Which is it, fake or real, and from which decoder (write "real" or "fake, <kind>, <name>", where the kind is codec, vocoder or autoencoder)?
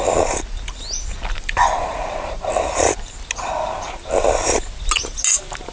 real